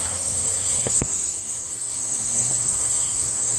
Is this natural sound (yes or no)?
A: no